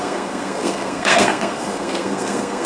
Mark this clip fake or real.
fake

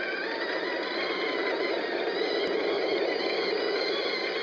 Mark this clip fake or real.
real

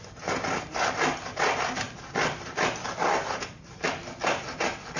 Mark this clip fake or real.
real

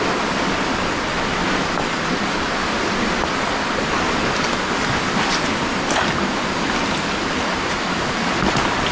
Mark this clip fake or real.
real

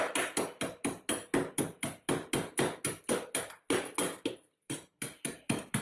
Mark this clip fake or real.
real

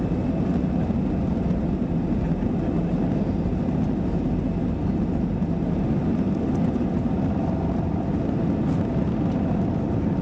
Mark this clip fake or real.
real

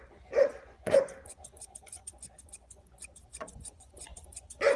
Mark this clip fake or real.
fake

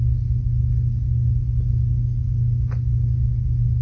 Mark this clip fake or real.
real